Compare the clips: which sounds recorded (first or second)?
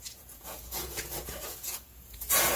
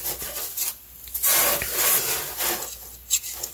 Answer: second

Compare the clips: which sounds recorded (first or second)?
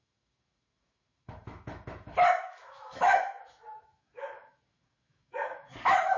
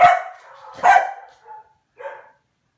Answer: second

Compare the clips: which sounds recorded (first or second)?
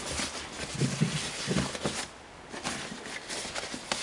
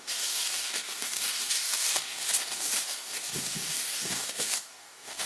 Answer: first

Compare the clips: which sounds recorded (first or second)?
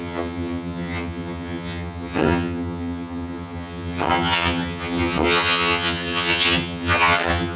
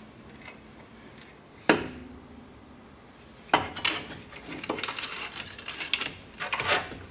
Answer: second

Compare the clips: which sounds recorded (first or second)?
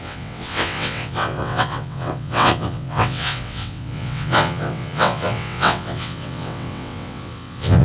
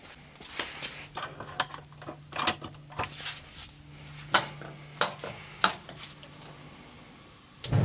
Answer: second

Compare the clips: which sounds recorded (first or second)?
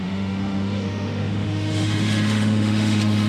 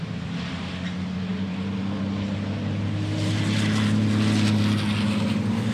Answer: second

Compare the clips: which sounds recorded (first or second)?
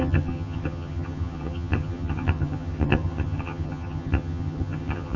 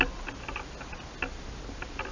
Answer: second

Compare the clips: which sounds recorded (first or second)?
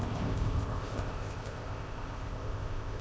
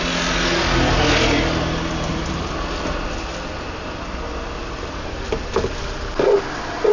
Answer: second